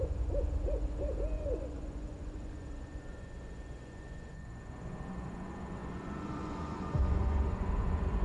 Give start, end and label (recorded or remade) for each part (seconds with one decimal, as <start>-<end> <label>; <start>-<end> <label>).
0.0-8.2 remade